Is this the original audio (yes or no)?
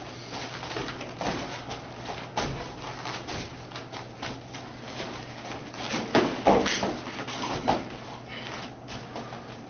yes